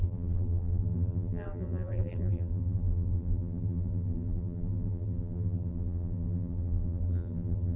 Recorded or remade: remade